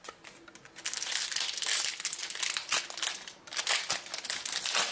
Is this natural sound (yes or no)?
yes